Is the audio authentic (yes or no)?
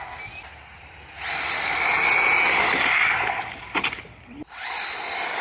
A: yes